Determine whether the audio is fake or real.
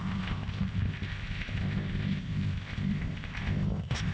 fake